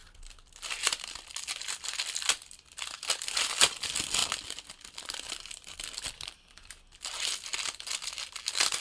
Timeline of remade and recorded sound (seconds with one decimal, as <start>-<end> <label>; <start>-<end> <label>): 0.0-3.5 remade; 3.5-4.2 recorded; 4.2-6.7 remade; 6.7-7.5 recorded; 7.5-8.8 remade

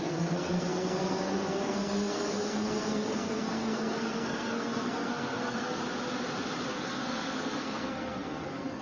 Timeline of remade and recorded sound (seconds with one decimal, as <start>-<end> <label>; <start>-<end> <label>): 0.0-5.8 remade; 5.8-6.7 recorded; 6.7-8.8 remade

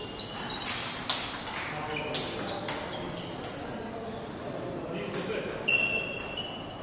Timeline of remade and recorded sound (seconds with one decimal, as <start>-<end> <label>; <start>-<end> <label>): 0.0-6.8 recorded

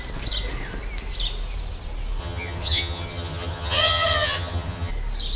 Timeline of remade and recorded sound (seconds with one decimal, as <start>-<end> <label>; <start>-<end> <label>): 0.0-2.2 recorded; 2.2-4.9 remade; 4.9-5.4 recorded

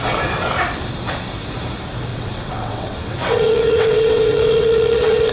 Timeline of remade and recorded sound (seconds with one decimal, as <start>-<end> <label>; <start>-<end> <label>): 0.0-2.1 recorded; 2.1-5.3 remade